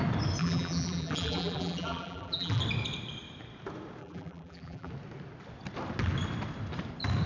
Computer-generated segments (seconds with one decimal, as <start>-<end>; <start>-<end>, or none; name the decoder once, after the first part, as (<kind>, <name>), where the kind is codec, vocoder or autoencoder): 0.4-2.6 (vocoder, BigVGAN v2); 4.0-4.9